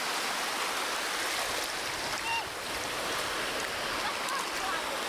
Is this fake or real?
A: real